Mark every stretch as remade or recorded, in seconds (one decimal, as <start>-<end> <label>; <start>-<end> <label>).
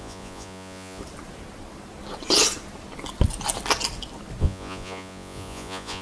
0.0-1.0 remade; 1.0-4.4 recorded; 4.4-6.0 remade